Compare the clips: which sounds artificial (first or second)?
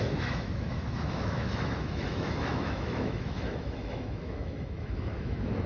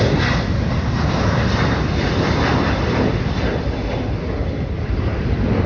first